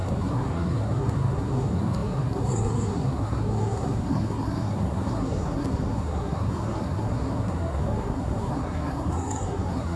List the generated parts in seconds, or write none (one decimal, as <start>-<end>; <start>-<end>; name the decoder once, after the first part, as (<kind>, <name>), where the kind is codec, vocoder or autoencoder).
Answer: 0.0-10.0 (codec, SNAC)